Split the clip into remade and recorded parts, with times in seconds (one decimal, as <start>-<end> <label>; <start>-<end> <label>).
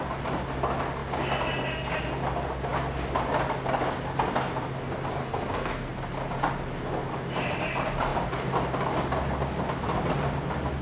0.0-5.2 recorded; 5.2-5.9 remade; 5.9-10.8 recorded